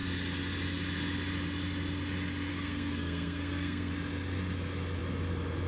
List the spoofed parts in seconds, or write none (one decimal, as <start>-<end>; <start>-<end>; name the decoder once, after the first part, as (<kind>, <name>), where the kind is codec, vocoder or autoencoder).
2.5-3.9 (codec, SNAC)